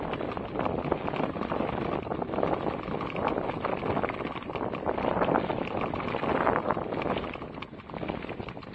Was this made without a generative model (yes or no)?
yes